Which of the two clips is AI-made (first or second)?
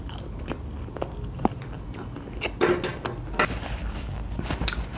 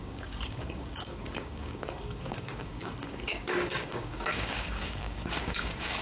second